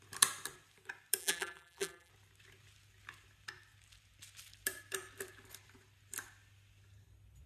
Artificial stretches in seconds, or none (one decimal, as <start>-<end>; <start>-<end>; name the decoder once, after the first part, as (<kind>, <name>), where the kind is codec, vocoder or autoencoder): 1.2-2.1 (vocoder, BigVGAN v2)

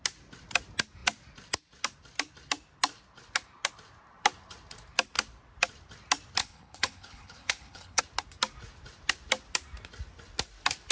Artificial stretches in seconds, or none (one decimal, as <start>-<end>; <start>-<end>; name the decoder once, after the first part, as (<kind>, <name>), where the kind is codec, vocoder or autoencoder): 6.4-8.0 (codec, HILCodec)

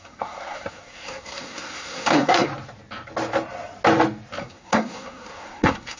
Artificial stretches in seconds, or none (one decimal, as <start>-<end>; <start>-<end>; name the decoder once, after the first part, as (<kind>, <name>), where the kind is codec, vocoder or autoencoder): 0.0-2.5 (codec, SNAC); 4.4-6.0

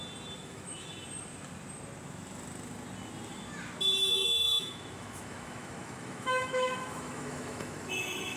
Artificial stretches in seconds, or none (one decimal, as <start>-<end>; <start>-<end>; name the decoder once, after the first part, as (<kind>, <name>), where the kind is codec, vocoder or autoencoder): 0.4-0.9 (autoencoder, DAC-VAE); 4.1-8.4

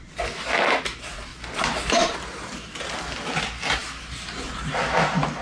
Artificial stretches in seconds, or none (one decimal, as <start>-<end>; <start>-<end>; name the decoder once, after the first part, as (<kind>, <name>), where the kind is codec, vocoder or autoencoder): none

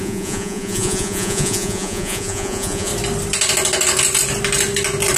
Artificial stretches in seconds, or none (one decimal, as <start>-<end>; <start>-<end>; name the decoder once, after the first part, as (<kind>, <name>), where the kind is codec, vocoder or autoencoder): 0.0-2.9 (vocoder, Vocos)

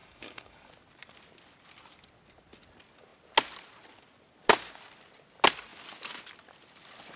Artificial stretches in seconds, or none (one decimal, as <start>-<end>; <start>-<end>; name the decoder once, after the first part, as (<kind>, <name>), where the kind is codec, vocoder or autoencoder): 0.0-0.7 (codec, DAC)

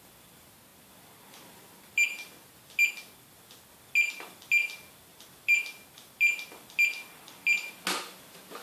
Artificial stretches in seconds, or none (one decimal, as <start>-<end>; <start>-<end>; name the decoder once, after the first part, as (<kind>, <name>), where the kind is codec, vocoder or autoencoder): 5.1-5.6 (vocoder, BigVGAN v2)